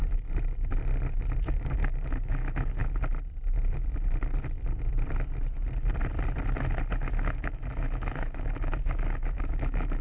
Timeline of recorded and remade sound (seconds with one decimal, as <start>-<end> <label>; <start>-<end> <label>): 0.0-1.4 recorded; 1.4-2.8 remade; 2.8-7.3 recorded; 7.3-10.0 remade